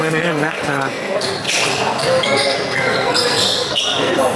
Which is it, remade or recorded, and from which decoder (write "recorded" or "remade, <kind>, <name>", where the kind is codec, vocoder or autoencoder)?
remade, codec, SNAC